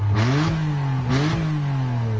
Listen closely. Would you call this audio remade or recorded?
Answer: recorded